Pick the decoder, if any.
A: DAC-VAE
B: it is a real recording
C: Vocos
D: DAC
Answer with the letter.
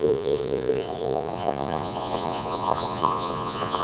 C